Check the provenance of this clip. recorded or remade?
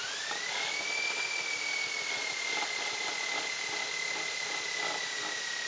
recorded